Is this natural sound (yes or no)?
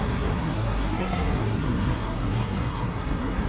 no